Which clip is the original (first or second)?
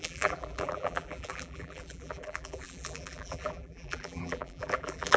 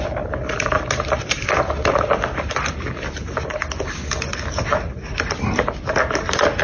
second